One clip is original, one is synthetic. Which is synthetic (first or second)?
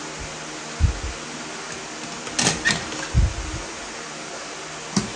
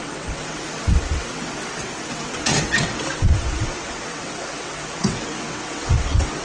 second